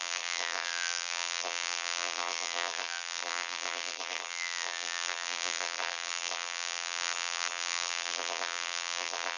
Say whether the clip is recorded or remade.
remade